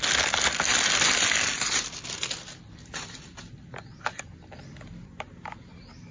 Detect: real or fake real